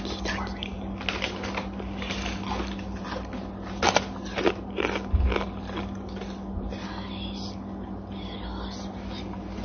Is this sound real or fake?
real